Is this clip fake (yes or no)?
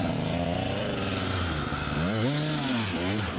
no